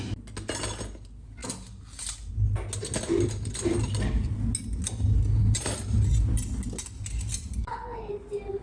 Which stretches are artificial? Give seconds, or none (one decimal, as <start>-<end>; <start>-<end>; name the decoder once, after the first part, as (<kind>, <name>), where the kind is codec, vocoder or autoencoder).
7.6-8.1 (codec, HILCodec)